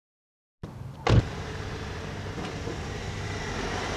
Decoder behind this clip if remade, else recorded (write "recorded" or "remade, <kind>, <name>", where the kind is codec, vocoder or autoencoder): recorded